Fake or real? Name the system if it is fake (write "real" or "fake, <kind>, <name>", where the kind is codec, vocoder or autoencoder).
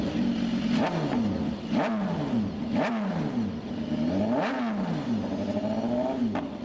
real